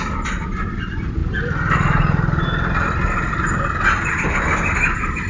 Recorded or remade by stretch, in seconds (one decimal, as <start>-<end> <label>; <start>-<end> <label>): 0.0-5.3 recorded